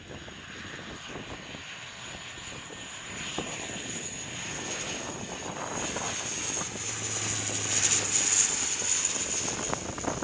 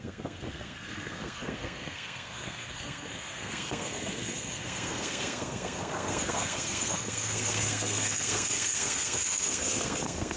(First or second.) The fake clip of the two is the second